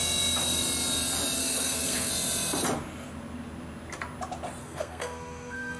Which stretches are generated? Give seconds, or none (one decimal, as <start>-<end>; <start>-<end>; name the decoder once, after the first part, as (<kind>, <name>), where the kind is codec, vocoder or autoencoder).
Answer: 1.4-2.1 (codec, SNAC); 4.6-5.8